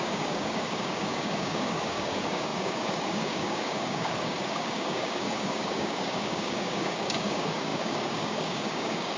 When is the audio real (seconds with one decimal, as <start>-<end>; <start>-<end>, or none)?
none